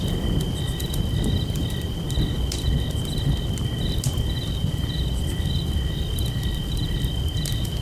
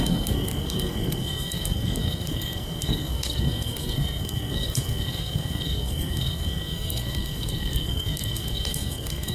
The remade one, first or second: second